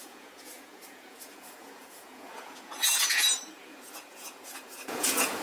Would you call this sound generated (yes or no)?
yes